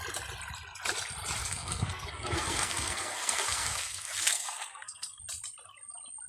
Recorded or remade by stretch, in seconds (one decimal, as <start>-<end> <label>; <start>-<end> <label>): 0.0-1.4 recorded; 1.4-5.2 remade; 5.2-6.3 recorded